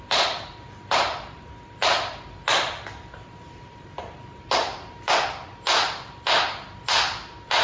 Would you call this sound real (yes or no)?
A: no